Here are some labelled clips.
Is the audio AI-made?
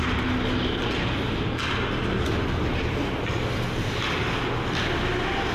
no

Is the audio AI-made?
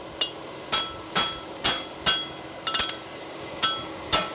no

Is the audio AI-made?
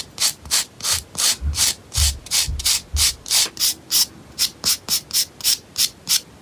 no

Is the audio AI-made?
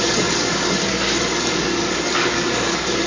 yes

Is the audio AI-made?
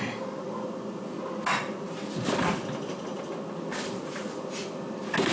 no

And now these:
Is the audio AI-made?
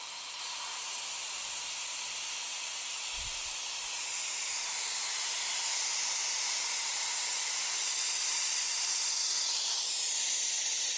no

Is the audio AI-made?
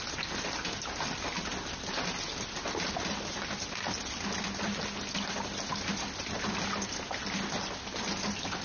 no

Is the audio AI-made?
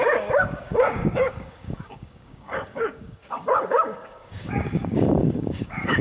yes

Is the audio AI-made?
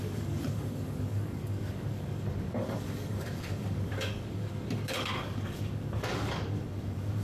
yes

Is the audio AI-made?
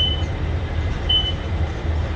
no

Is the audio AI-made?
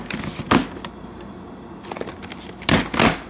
no